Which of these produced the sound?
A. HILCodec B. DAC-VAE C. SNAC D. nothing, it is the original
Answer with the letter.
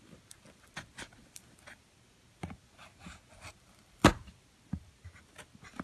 D